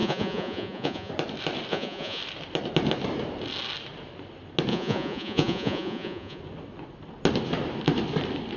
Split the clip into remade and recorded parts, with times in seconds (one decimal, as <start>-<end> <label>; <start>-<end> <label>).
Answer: 0.0-1.1 remade; 1.1-1.7 recorded; 1.7-2.2 remade; 2.2-4.7 recorded; 4.7-6.4 remade; 6.4-8.6 recorded